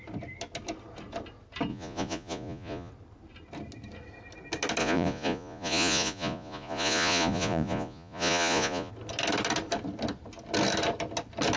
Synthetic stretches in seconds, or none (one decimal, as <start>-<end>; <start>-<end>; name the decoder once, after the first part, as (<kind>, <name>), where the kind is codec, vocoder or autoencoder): 1.7-2.9 (vocoder, Vocos); 4.8-8.9